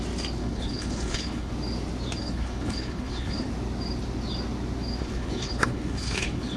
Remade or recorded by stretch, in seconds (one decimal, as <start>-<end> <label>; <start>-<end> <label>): 0.0-0.4 recorded; 0.4-1.5 remade; 1.5-2.2 recorded; 2.2-3.5 remade; 3.5-5.0 recorded; 5.0-6.6 remade